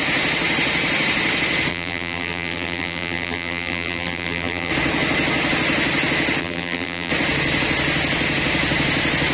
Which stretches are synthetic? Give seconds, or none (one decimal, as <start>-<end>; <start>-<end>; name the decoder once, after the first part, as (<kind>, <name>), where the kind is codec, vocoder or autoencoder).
1.7-4.7 (vocoder, BigVGAN v2); 6.4-7.1